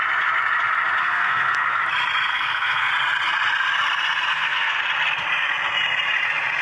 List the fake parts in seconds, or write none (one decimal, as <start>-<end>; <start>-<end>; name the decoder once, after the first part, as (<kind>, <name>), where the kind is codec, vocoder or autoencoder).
1.0-1.8 (codec, SNAC); 2.3-2.9; 4.3-4.8